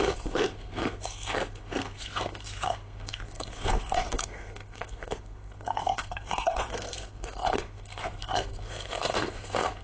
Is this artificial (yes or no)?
yes